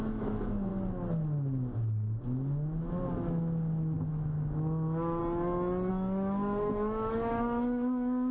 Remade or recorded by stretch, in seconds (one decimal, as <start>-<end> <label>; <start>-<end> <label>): 0.0-0.7 remade; 0.7-4.1 recorded; 4.1-5.2 remade; 5.2-5.9 recorded; 5.9-8.3 remade